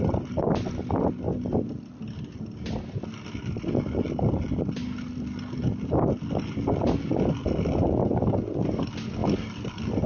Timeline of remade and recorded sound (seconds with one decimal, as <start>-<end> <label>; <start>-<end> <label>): 0.0-10.1 recorded